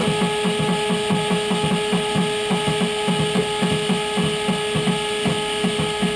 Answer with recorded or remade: recorded